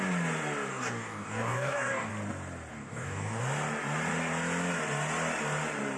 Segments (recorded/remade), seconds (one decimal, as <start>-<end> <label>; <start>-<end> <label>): 0.0-0.7 recorded; 0.7-2.1 remade; 2.1-2.7 recorded; 2.7-3.4 remade; 3.4-6.0 recorded